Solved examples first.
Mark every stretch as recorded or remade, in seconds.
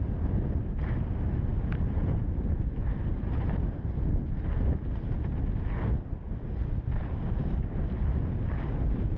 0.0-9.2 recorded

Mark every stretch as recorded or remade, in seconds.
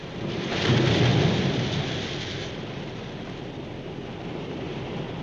0.0-1.1 remade; 1.1-4.2 recorded; 4.2-5.2 remade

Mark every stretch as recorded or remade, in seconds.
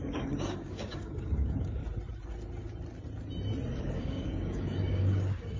0.0-1.8 remade; 1.8-3.8 recorded; 3.8-5.6 remade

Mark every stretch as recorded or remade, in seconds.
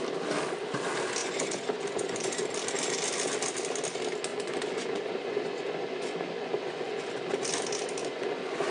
0.0-1.2 recorded; 1.2-2.4 remade; 2.4-4.3 recorded; 4.3-7.1 remade; 7.1-8.0 recorded; 8.0-8.7 remade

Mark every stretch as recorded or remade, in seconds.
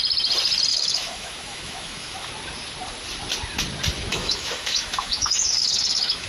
0.0-0.7 recorded; 0.7-2.3 remade; 2.3-4.1 recorded; 4.1-6.3 remade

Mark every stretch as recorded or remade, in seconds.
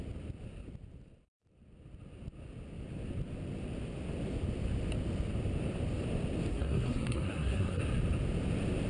0.0-6.5 recorded; 6.5-7.8 remade; 7.8-8.9 recorded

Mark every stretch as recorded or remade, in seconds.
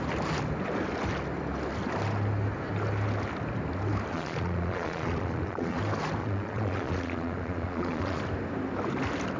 0.0-4.1 recorded; 4.1-5.8 remade; 5.8-6.2 recorded; 6.2-8.2 remade; 8.2-9.4 recorded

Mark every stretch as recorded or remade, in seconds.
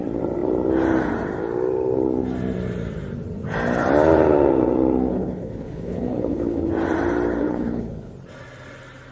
0.0-5.1 recorded; 5.1-6.7 remade; 6.7-7.4 recorded; 7.4-8.1 remade; 8.1-9.1 recorded